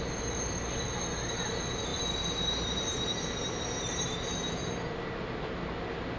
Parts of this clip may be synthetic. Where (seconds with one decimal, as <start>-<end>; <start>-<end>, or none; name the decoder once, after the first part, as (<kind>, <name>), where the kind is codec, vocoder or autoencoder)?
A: 1.9-4.7 (vocoder, BigVGAN v2)